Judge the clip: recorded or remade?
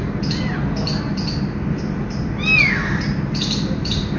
recorded